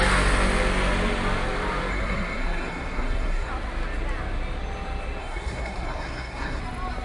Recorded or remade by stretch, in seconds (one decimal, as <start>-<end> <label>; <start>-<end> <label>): 0.0-1.9 recorded; 1.9-3.5 remade; 3.5-5.2 recorded; 5.2-6.6 remade; 6.6-7.0 recorded